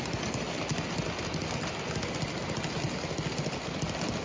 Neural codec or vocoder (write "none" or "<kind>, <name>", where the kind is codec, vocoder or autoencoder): none